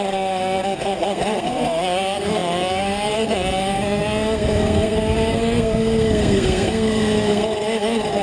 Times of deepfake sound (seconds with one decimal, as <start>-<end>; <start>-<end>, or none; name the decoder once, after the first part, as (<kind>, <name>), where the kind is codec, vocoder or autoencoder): 0.0-8.2 (codec, SNAC)